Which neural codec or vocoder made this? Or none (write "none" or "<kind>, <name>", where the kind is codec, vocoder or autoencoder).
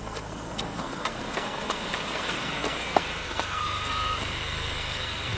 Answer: codec, SNAC